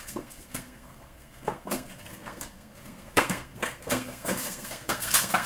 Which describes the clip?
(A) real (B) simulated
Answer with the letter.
B